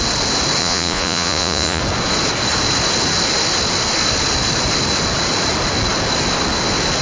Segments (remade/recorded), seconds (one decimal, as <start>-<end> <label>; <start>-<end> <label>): 0.0-0.6 recorded; 0.6-1.8 remade; 1.8-7.0 recorded